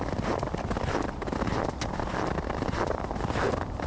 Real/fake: real